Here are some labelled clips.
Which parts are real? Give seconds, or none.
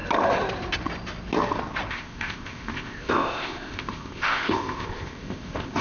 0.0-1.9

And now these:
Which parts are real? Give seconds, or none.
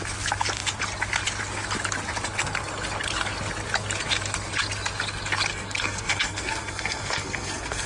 0.0-5.5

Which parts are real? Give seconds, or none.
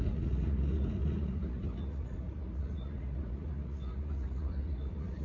none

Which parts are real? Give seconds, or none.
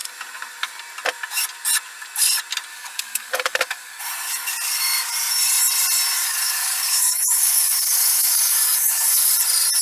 0.0-2.7; 4.0-6.2; 9.3-9.8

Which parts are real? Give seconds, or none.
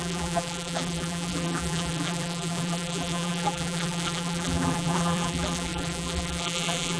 none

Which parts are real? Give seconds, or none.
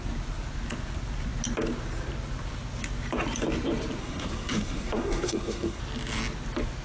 0.0-4.0; 5.8-6.8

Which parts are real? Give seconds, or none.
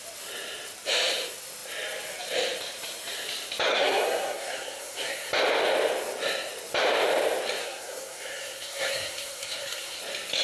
0.0-3.7; 5.3-7.6; 10.0-10.4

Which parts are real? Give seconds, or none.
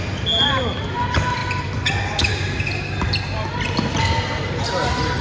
0.0-5.2